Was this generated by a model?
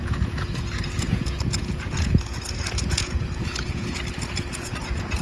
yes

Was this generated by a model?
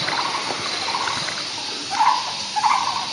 no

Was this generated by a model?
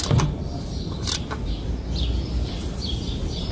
no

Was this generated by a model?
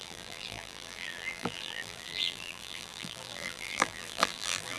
yes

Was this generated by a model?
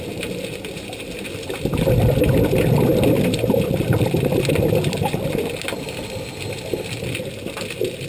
no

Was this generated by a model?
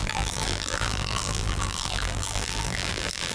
yes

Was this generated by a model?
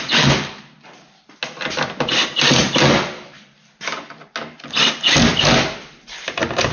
no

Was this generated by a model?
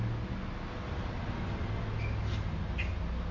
no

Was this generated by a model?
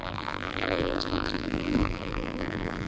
yes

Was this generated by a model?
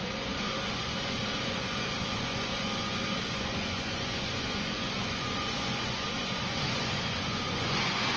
yes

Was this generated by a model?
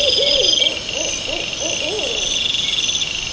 no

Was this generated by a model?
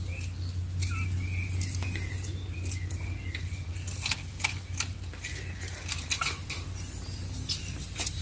no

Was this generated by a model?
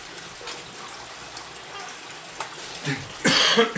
no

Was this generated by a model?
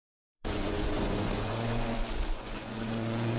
yes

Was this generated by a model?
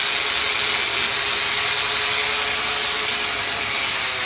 no